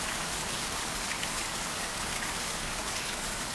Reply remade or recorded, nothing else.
remade